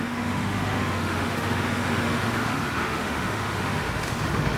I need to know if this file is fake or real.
fake